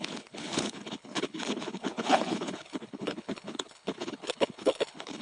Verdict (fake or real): fake